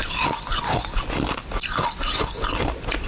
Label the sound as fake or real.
real